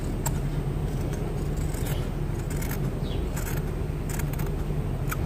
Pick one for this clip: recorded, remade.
recorded